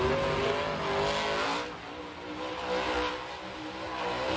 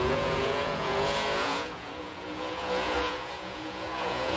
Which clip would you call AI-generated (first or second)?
second